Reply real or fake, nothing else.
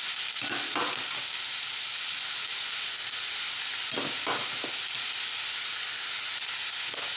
real